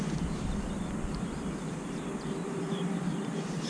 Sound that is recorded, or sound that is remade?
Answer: remade